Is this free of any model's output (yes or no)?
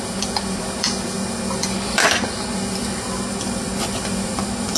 no